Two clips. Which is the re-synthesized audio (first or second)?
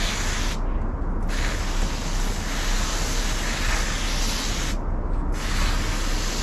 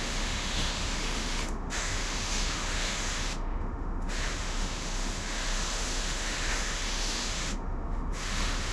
second